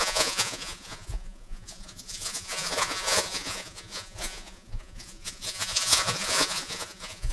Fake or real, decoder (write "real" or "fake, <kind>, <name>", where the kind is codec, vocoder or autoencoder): fake, vocoder, Vocos